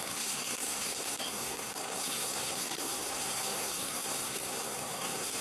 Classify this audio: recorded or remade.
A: remade